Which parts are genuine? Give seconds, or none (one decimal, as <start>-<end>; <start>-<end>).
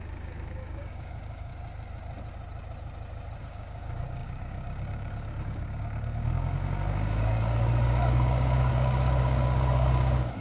1.5-3.4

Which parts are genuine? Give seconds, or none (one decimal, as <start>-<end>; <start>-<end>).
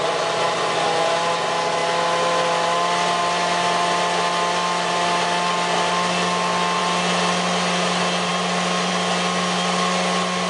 0.0-10.5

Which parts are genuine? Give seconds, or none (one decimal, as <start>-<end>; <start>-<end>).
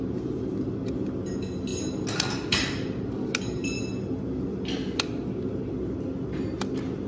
0.0-7.1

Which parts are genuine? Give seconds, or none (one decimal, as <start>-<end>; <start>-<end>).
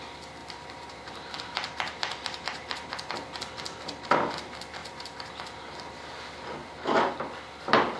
0.0-0.4; 3.1-4.8; 5.9-6.6; 7.1-8.0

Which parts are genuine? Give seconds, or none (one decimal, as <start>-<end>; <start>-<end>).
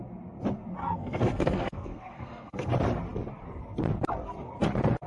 0.0-0.8; 2.7-5.1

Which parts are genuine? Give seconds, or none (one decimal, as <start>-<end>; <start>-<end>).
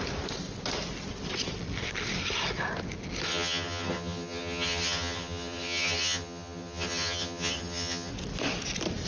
0.0-3.3; 8.1-9.1